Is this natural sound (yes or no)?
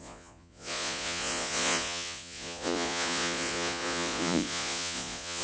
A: no